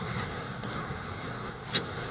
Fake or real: fake